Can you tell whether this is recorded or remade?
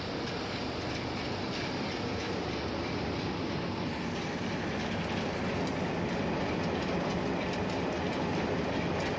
recorded